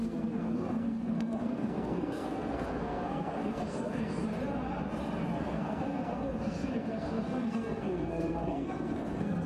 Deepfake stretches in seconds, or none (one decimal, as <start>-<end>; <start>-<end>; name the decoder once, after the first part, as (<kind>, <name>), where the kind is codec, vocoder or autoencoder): 0.0-4.2 (codec, SNAC); 5.4-9.5